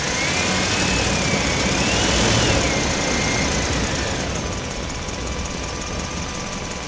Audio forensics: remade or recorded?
recorded